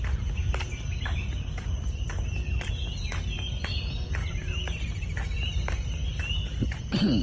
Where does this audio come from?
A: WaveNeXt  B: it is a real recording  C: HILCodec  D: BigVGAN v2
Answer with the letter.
B